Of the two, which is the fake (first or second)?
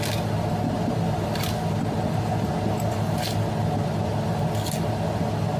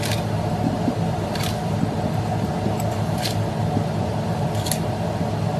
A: second